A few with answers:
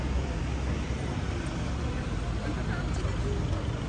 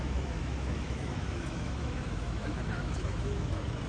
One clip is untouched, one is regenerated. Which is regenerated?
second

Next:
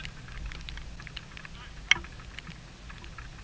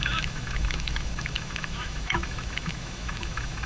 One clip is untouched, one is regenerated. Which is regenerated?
second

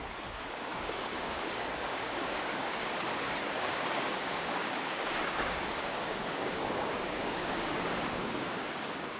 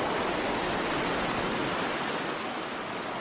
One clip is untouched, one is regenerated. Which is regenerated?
first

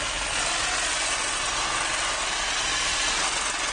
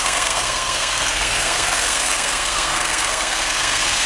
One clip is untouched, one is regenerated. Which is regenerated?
second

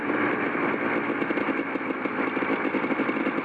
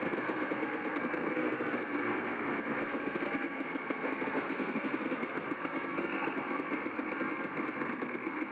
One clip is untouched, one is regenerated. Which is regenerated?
second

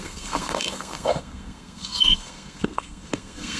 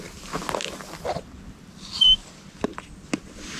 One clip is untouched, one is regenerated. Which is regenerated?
first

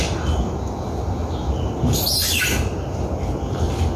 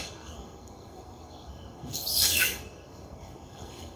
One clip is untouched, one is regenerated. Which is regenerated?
second